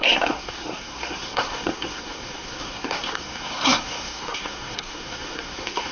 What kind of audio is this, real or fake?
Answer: fake